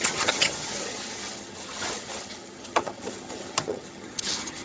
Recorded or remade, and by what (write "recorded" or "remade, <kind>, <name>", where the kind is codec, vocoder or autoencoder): remade, vocoder, HiFi-GAN